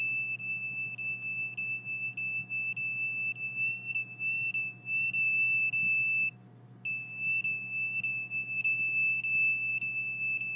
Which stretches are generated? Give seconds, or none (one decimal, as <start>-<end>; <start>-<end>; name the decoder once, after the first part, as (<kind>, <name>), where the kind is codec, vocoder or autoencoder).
none

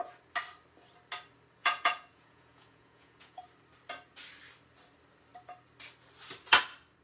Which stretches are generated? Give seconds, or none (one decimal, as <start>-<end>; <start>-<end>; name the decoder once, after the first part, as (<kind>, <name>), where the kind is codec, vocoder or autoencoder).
1.6-3.4 (vocoder, Vocos)

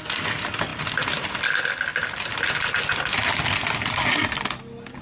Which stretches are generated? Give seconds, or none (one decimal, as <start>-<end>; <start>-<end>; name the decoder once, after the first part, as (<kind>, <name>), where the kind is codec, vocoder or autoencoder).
none